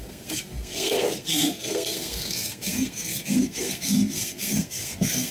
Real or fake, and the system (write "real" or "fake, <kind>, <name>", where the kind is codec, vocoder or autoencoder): fake, codec, SNAC